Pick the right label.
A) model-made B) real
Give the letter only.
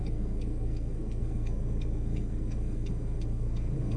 A